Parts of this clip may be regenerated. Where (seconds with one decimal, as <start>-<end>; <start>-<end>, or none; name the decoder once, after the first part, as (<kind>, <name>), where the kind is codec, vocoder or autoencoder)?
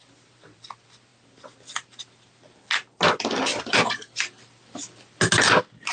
none